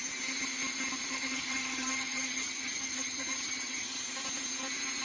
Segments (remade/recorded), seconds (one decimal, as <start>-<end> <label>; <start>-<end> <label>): 0.0-1.1 recorded; 1.1-4.1 remade; 4.1-5.0 recorded